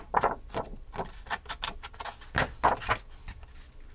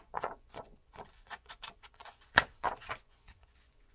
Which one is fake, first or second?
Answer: second